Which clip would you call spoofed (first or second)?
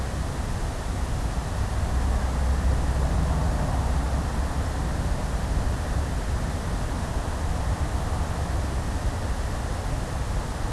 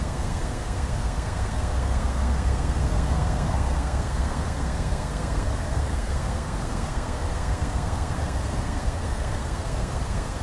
second